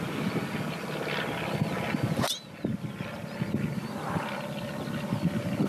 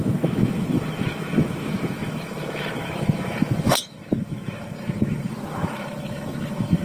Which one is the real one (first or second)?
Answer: first